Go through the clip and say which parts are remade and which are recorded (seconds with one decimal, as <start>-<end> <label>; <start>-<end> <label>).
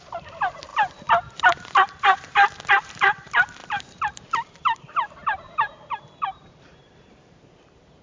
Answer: 0.0-8.0 remade